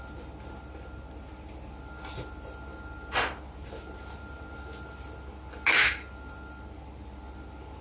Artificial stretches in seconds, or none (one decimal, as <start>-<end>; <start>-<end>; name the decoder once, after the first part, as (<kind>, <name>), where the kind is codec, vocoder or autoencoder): none